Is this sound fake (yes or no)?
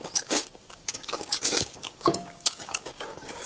yes